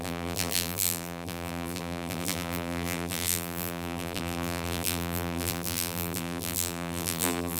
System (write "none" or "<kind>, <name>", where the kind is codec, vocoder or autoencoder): vocoder, BigVGAN v2